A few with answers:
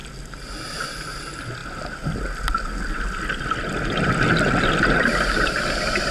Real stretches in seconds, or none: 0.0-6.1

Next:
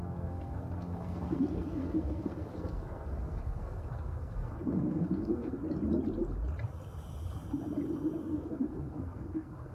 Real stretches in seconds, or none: 5.6-8.2

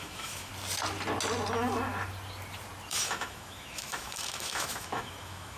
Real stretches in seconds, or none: 0.5-2.9

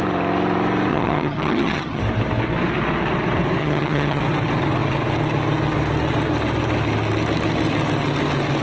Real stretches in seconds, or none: 0.0-0.9; 2.0-3.6; 4.2-8.6